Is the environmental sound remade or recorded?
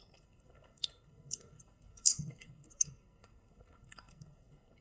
remade